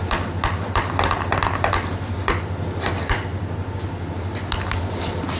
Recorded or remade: recorded